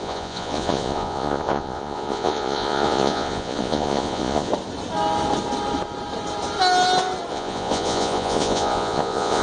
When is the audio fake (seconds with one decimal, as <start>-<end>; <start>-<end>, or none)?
0.0-4.5; 7.3-9.4